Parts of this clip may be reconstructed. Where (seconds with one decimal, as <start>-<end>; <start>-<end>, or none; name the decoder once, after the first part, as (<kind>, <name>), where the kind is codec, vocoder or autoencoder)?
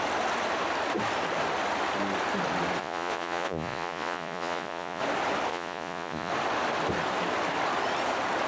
2.8-5.0 (vocoder, Vocos); 5.5-6.3